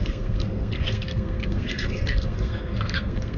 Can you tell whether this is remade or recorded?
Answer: remade